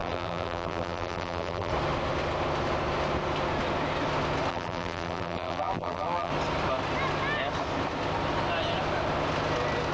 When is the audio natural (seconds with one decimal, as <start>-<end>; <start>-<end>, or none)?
1.7-4.5; 6.3-9.9